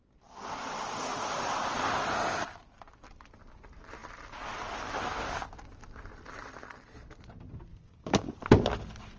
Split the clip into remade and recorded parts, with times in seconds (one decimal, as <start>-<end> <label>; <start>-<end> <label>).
0.0-7.7 recorded; 7.7-8.4 remade; 8.4-9.2 recorded